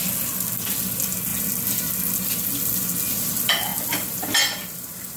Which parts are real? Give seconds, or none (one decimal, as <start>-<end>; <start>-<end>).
0.0-5.2